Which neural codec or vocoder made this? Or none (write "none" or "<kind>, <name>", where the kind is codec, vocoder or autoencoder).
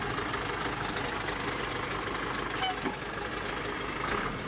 none